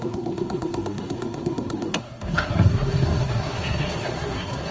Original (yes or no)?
no